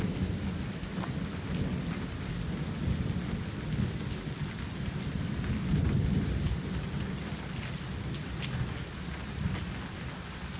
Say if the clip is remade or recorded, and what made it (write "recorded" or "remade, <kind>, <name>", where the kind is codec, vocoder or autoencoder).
recorded